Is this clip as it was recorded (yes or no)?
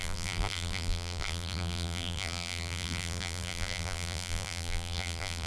no